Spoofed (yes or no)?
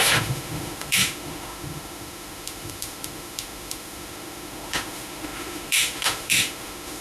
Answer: yes